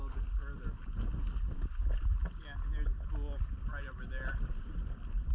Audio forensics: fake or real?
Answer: real